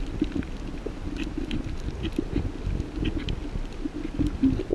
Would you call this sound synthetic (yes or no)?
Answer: no